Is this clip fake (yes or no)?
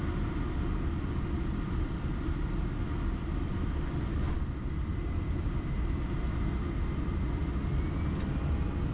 no